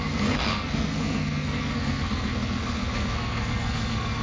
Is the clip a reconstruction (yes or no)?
yes